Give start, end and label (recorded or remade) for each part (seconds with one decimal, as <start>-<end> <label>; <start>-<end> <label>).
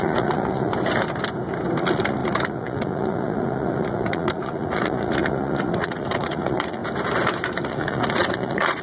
0.0-0.7 remade; 0.7-1.8 recorded; 1.8-6.8 remade; 6.8-7.6 recorded; 7.6-8.8 remade